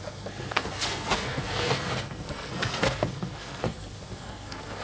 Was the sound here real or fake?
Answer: fake